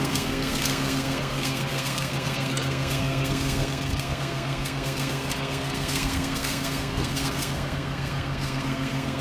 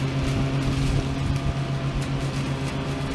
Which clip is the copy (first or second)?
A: first